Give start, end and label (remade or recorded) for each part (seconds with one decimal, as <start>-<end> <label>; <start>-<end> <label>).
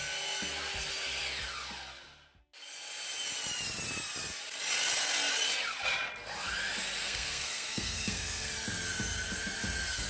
0.0-7.0 recorded; 7.0-8.5 remade; 8.5-10.1 recorded